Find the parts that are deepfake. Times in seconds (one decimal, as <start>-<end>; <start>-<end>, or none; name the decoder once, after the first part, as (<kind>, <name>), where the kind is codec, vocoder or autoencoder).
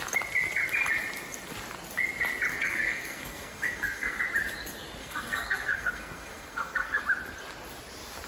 2.5-4.2 (codec, SNAC); 5.0-7.0